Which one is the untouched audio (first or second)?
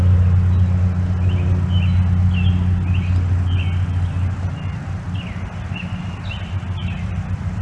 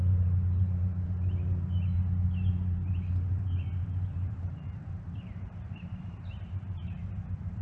first